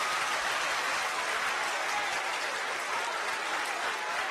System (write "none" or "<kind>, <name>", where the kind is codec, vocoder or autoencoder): none